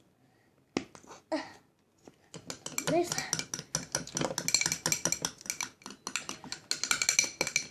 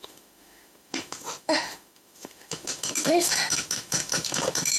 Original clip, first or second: first